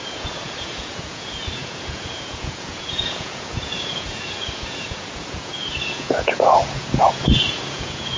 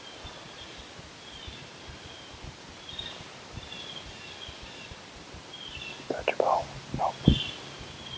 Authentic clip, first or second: second